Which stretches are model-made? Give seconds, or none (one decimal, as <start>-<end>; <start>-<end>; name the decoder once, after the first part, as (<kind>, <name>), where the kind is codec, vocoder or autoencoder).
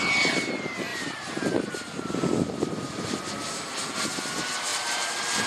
0.9-3.2 (vocoder, BigVGAN v2); 4.7-5.5